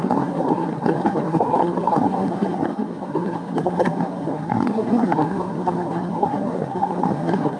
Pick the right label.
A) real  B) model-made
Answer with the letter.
B